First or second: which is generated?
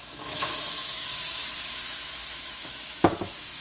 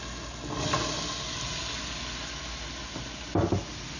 first